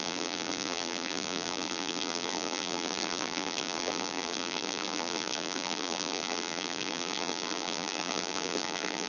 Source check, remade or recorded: remade